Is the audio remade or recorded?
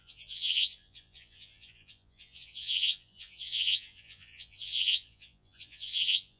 remade